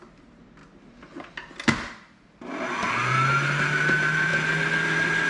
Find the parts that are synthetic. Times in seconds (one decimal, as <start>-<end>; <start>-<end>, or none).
none